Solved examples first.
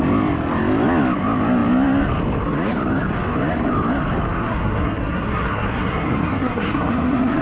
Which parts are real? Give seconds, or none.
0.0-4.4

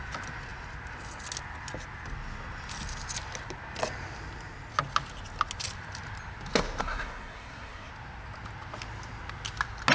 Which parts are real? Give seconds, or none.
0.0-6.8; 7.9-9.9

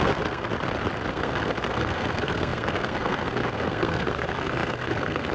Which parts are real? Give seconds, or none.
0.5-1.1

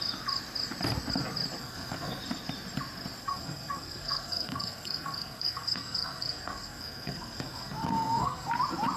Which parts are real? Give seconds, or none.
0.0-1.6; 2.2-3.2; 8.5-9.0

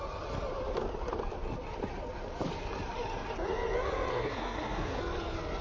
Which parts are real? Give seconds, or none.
0.0-4.1; 5.0-5.6

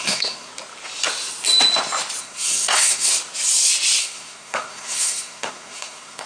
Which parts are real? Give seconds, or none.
0.5-2.2; 3.1-4.0